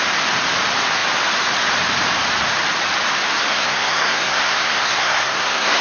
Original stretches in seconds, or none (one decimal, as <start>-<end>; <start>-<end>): 0.0-3.5